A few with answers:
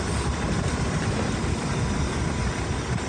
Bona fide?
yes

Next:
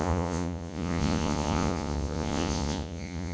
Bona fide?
no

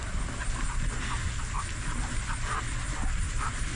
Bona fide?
yes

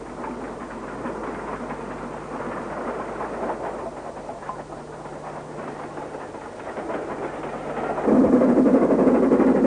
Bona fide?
yes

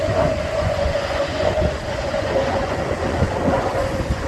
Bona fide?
no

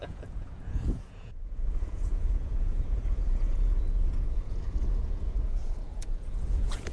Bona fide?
no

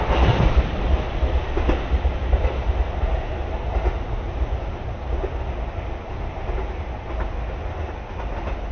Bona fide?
yes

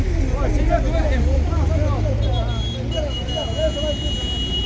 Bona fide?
yes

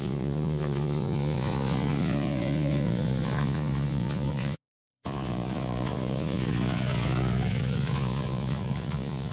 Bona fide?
no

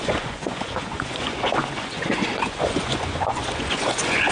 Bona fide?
no